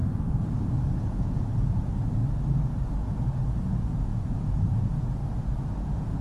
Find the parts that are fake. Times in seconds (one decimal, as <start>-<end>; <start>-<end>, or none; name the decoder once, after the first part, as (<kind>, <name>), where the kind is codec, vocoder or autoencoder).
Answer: 1.0-2.2 (vocoder, Vocos); 3.6-5.2; 5.8-6.2